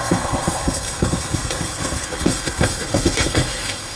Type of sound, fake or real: fake